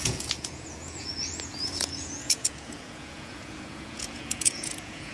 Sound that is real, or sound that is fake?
fake